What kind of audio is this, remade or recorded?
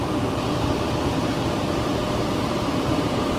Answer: remade